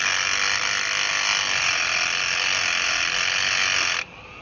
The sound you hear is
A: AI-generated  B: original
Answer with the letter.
A